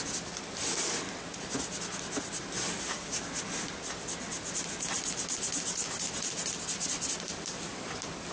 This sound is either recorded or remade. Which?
recorded